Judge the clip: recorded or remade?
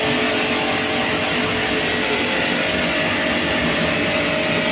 recorded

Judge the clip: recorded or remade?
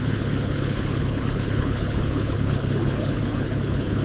remade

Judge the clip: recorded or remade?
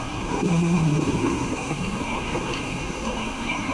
remade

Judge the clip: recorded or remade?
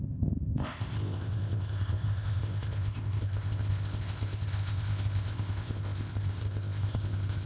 remade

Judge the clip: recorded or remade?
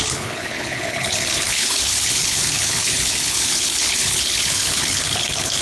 remade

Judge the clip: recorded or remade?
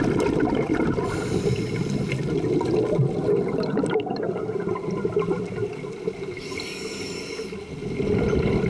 recorded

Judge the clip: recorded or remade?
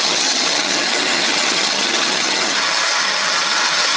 remade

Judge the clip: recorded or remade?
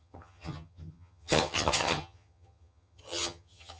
remade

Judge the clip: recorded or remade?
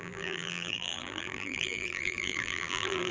remade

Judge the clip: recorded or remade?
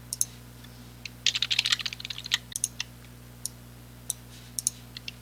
recorded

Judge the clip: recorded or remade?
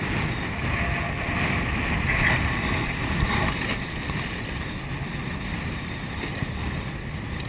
recorded